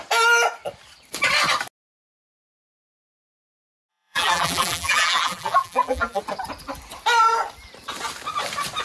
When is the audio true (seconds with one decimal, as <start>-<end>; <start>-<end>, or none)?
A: 0.0-3.9; 6.2-8.8